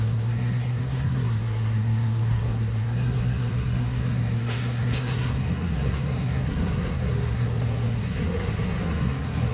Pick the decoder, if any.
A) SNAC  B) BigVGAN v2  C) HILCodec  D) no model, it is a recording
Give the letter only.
A